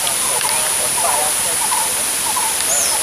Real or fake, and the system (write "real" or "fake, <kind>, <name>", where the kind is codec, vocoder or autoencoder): real